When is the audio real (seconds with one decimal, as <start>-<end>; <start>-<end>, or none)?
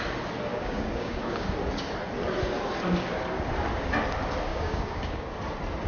0.0-0.5; 1.5-4.5; 5.3-5.9